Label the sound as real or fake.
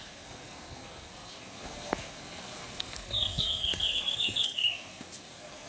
fake